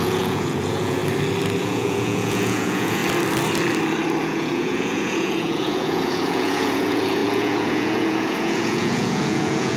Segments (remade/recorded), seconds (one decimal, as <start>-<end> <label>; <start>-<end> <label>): 0.0-1.0 remade; 1.0-1.6 recorded; 1.6-3.0 remade; 3.0-4.2 recorded; 4.2-9.8 remade